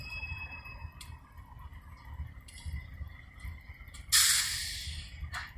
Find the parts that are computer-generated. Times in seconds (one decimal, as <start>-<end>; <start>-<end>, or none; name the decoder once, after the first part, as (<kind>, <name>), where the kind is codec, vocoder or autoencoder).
none